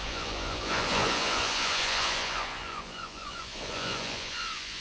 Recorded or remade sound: remade